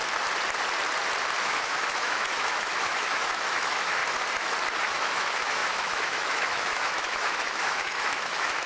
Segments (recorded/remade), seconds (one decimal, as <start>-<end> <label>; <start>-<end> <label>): 0.0-1.4 recorded; 1.4-4.0 remade; 4.0-4.9 recorded; 4.9-8.7 remade